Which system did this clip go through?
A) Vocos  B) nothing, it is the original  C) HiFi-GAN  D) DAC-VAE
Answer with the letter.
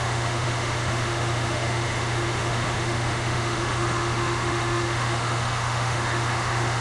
D